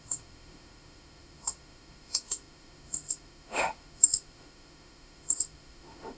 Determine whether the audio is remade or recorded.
remade